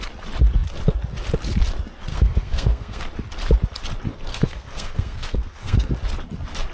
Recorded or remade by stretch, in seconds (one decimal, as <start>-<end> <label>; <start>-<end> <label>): 0.0-2.1 recorded; 2.1-3.0 remade; 3.0-4.3 recorded; 4.3-5.9 remade; 5.9-6.7 recorded